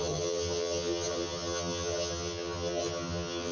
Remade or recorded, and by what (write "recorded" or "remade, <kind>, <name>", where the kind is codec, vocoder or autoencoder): remade, vocoder, HiFi-GAN